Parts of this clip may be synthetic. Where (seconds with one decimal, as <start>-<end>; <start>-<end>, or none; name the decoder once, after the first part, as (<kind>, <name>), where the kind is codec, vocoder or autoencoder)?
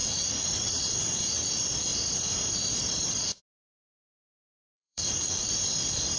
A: 0.0-1.5 (vocoder, Vocos); 3.9-5.5